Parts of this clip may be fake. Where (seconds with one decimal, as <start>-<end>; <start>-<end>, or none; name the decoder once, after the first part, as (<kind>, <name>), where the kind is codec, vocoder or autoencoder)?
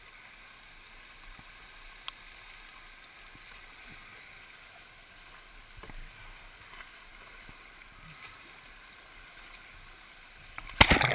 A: none